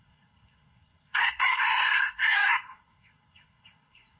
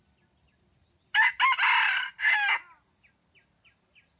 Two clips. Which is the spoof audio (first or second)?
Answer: first